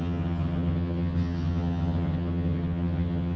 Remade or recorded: remade